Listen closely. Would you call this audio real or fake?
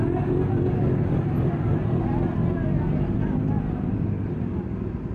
real